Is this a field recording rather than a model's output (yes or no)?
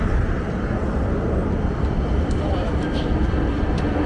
yes